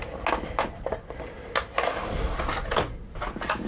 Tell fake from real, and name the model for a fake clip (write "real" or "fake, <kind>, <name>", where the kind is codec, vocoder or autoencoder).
real